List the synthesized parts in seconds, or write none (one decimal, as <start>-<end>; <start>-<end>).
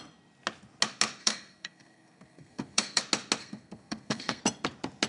1.2-3.0; 3.4-4.4